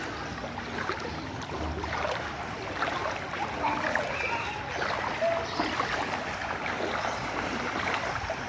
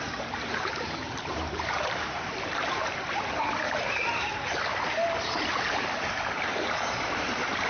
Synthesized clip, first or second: second